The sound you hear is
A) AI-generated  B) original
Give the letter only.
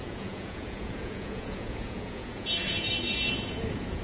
A